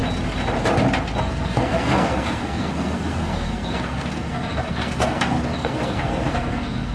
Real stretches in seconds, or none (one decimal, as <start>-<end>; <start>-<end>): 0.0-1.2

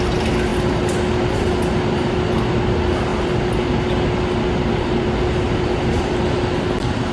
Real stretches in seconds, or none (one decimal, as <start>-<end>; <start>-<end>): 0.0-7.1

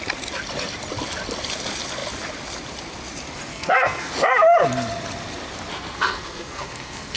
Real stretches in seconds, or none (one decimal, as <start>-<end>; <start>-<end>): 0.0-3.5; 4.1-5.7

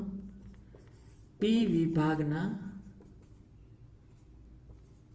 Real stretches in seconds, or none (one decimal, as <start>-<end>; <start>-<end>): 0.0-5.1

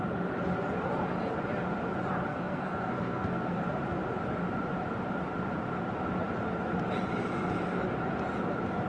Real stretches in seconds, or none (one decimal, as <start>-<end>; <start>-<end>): 0.0-2.3; 3.6-8.9

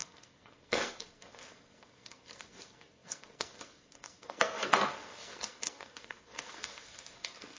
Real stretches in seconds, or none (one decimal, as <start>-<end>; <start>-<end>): none